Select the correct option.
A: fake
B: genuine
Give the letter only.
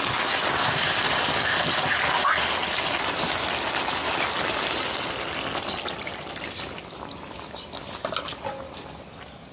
B